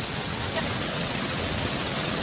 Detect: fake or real fake